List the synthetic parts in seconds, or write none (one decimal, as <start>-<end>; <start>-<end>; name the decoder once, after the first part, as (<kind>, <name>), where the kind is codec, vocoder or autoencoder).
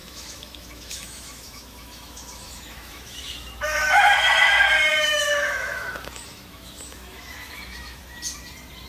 0.0-4.0 (autoencoder, DAC-VAE); 4.9-8.0